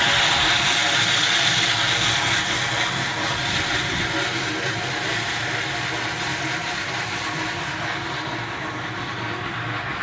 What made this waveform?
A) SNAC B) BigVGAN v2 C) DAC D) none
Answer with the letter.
D